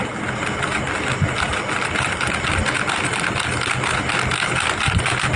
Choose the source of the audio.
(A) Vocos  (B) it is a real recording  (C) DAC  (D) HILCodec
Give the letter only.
B